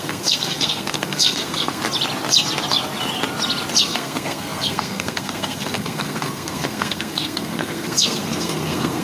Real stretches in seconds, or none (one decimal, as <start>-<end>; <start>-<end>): 1.8-3.8